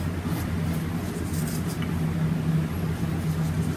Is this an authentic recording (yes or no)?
yes